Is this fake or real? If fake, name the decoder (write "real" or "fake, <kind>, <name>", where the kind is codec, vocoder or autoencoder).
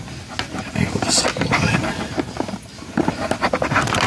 real